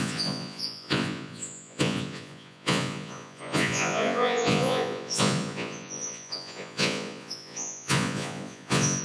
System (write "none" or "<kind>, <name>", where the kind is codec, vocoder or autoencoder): vocoder, Vocos